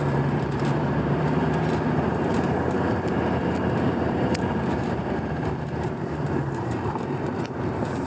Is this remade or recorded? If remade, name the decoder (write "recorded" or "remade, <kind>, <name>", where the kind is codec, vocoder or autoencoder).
remade, vocoder, BigVGAN v2